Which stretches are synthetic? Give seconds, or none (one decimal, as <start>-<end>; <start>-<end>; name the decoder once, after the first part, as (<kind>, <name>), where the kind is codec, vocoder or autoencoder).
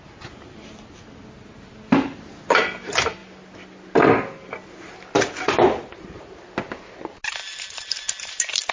none